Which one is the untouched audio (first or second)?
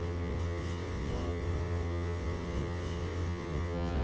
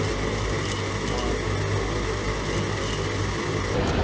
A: second